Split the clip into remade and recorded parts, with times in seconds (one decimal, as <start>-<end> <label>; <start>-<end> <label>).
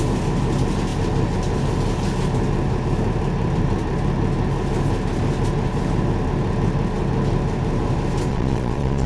0.0-8.3 recorded; 8.3-9.1 remade